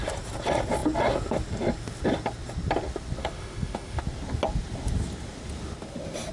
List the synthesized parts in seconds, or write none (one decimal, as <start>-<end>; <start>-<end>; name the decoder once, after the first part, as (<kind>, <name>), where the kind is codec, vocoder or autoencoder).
3.2-4.0 (autoencoder, DAC-VAE)